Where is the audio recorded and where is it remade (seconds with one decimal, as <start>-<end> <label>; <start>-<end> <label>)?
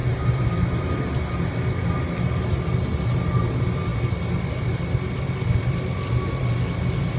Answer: 0.0-7.2 recorded